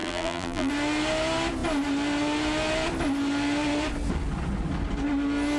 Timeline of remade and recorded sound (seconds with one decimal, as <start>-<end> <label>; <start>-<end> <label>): 0.0-0.7 remade; 0.7-5.6 recorded